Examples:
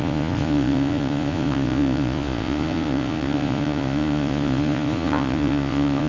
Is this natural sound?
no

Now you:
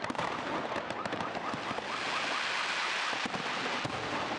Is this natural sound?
yes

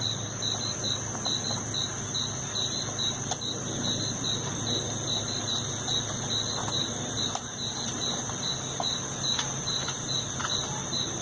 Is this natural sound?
yes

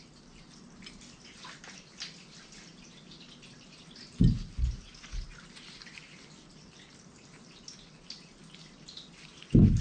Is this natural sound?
yes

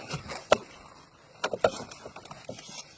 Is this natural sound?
yes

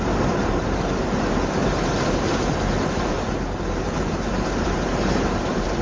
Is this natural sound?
no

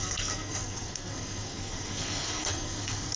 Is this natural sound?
no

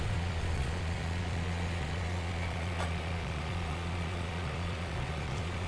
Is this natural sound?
no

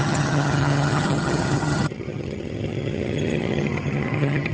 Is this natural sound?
no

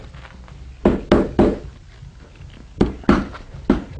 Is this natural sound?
yes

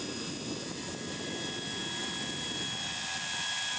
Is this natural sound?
yes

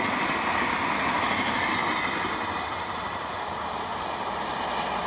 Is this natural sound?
yes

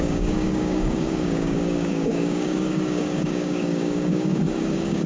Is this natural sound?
no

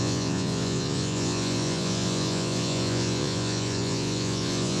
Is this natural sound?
no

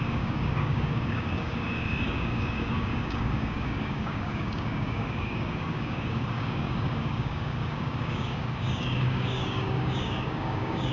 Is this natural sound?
no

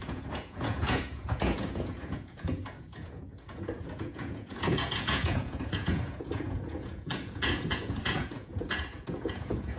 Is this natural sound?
no